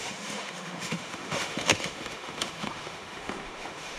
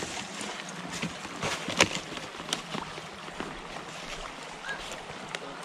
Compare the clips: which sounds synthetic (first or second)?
first